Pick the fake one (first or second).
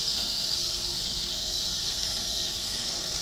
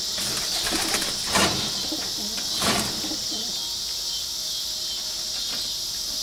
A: first